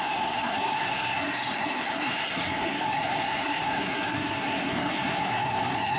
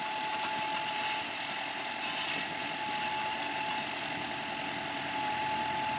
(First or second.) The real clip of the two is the second